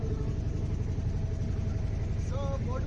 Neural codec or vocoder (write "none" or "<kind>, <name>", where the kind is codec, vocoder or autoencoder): none